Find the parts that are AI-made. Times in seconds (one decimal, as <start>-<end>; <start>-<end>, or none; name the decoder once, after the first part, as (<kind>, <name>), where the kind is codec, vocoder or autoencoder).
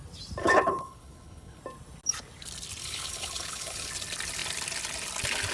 0.4-1.6 (codec, HILCodec); 2.8-3.9